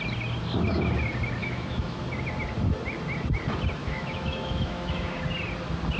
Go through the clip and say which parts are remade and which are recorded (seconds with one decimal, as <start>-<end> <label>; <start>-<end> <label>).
0.0-1.4 recorded; 1.4-2.0 remade; 2.0-3.8 recorded; 3.8-5.2 remade; 5.2-6.0 recorded